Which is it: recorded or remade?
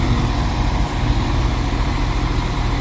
remade